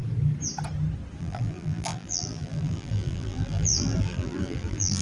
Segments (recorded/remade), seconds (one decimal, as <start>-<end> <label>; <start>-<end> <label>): 0.0-1.2 recorded; 1.2-5.0 remade